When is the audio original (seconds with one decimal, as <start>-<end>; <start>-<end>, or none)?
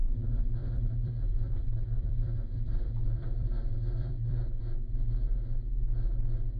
0.0-0.6; 4.6-6.6